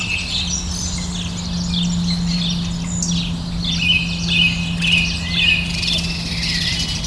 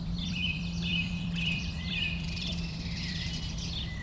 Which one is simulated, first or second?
second